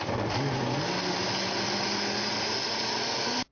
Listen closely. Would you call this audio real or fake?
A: real